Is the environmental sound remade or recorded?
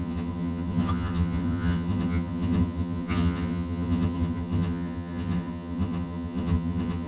remade